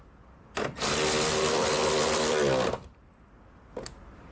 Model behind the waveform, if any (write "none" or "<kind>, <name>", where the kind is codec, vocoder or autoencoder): none